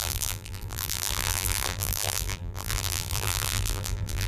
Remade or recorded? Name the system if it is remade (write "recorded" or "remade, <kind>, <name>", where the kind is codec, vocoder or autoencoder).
remade, vocoder, BigVGAN v2